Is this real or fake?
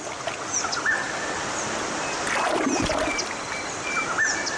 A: fake